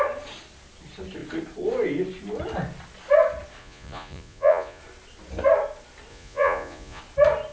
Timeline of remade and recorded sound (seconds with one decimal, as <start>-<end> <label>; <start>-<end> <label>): 0.0-3.6 recorded; 3.6-4.8 remade; 4.8-6.1 recorded; 6.1-7.0 remade; 7.0-7.5 recorded